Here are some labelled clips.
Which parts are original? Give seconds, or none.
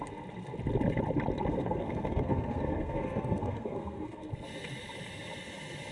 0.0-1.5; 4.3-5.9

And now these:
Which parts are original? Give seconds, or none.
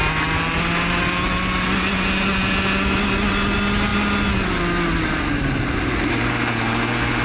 0.0-7.2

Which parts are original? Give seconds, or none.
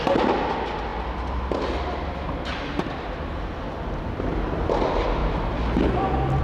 0.0-6.4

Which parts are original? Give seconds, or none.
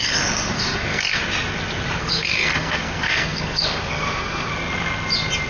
1.2-2.0; 4.5-5.5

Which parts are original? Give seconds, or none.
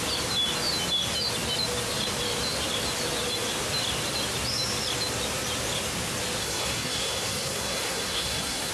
0.0-6.4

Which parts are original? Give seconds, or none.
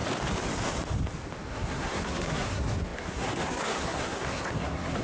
0.0-1.5